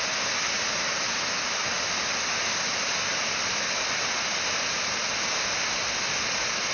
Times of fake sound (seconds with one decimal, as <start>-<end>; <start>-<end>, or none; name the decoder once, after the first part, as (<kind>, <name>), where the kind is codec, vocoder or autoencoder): none